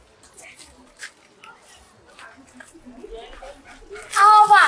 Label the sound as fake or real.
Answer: real